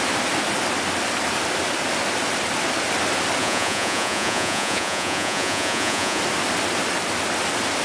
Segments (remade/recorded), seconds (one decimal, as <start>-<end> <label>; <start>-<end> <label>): 0.0-3.4 recorded; 3.4-6.2 remade; 6.2-7.8 recorded